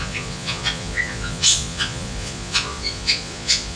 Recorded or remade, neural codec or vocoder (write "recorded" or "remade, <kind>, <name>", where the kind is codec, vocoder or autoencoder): remade, vocoder, Vocos